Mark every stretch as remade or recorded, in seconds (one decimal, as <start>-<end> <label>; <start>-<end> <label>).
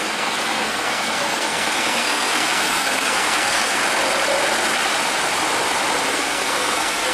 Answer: 0.0-3.8 remade; 3.8-6.1 recorded; 6.1-7.1 remade